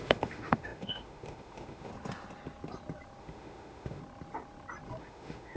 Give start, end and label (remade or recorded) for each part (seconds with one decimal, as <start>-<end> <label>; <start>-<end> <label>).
0.0-1.9 remade; 1.9-3.2 recorded; 3.2-4.0 remade; 4.0-5.0 recorded; 5.0-5.6 remade